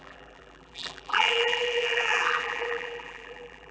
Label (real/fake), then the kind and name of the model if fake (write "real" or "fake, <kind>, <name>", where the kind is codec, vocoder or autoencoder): fake, vocoder, BigVGAN v2